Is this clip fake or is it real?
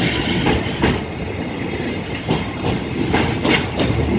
real